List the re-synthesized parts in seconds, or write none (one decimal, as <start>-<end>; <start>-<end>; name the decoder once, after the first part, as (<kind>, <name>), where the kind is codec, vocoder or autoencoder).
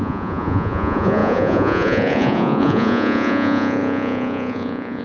0.0-5.0 (vocoder, Vocos)